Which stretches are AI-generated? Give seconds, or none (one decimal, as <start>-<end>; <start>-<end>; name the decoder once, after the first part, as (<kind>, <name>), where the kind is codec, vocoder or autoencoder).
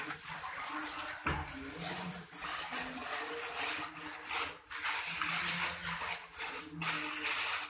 none